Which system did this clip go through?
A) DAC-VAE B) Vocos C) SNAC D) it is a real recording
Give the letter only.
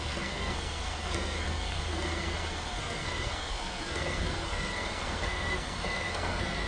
C